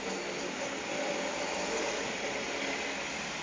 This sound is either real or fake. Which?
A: real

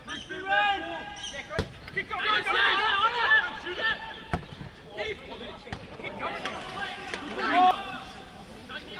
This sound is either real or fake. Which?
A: fake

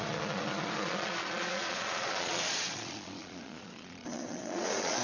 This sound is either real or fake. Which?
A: fake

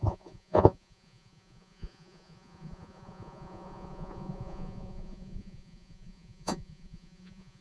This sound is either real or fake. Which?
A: fake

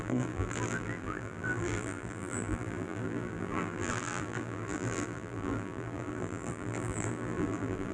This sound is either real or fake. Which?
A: fake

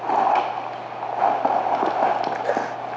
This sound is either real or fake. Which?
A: real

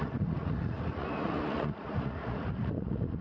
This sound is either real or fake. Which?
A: fake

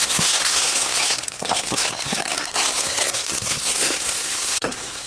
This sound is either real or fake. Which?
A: fake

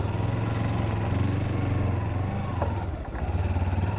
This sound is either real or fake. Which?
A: real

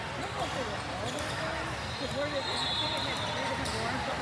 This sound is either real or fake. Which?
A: real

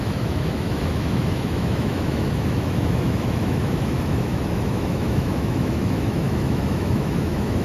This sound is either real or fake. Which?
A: fake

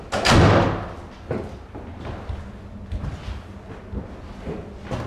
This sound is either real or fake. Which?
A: real